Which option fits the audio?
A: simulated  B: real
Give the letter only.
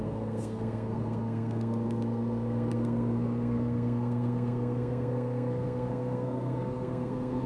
A